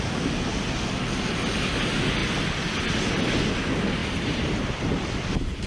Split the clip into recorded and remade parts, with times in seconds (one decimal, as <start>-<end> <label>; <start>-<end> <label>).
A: 0.0-4.0 recorded; 4.0-4.7 remade; 4.7-5.7 recorded